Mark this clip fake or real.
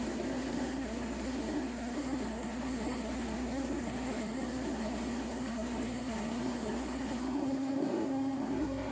fake